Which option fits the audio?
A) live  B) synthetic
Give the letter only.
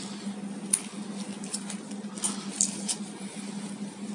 A